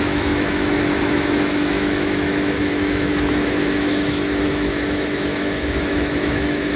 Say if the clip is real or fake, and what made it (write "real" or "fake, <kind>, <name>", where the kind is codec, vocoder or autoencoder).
fake, autoencoder, DAC-VAE